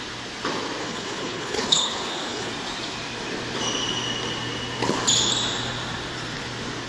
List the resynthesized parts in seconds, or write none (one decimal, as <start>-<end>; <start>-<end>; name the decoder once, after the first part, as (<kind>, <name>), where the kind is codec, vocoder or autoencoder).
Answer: 0.8-2.5 (codec, HILCodec)